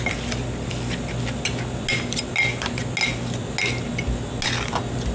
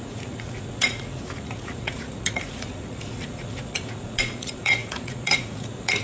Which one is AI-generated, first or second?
second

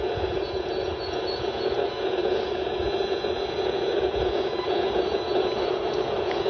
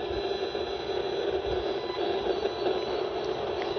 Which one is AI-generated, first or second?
first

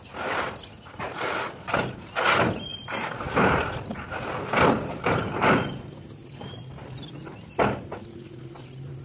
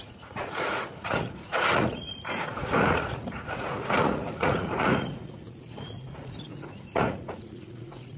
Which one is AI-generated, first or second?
second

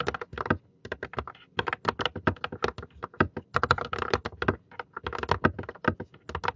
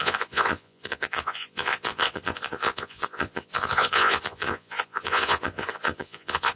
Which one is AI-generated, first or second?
second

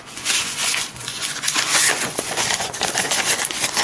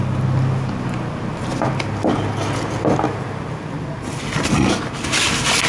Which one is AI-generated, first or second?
first